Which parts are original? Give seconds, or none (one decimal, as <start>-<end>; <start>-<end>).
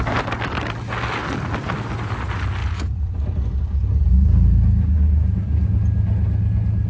0.0-2.6; 3.5-6.9